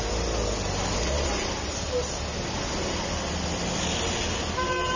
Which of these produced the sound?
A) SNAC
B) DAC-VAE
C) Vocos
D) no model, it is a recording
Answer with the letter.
D